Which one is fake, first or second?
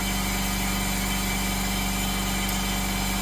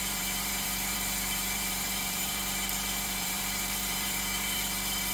second